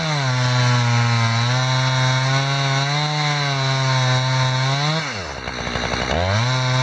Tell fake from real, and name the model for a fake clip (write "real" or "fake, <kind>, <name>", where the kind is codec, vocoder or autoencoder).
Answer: real